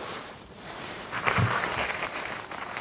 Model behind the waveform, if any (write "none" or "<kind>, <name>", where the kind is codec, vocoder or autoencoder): vocoder, BigVGAN v2